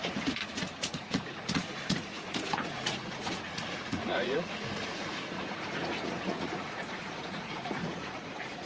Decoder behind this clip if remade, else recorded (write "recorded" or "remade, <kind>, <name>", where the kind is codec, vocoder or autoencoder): remade, vocoder, Vocos